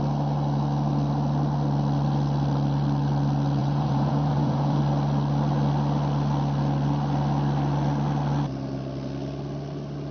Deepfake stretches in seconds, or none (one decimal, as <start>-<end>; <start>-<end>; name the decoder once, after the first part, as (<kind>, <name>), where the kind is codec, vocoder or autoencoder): 3.6-4.8 (vocoder, Vocos)